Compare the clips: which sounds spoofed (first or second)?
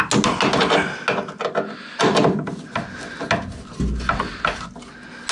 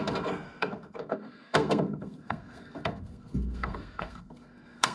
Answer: second